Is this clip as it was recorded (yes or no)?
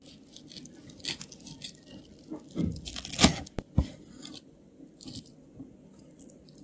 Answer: yes